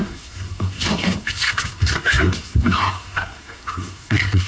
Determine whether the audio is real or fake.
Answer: fake